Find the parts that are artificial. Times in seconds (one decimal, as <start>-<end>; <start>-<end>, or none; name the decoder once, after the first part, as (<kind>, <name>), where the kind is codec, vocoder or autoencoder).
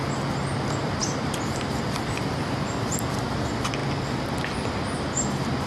1.0-1.6 (vocoder, BigVGAN v2)